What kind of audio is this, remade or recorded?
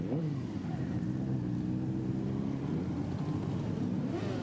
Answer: recorded